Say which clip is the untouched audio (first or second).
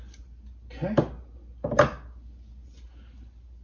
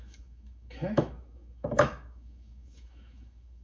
first